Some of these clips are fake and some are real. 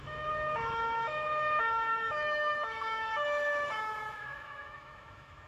fake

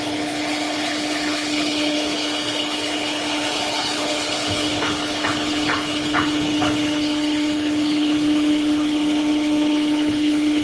fake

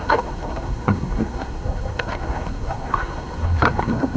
fake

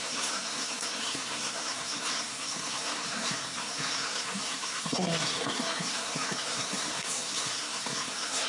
fake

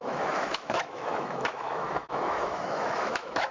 fake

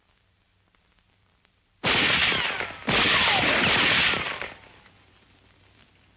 fake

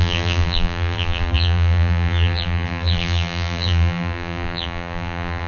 fake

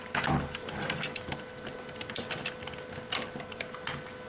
real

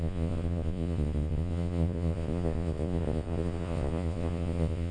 fake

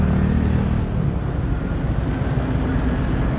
real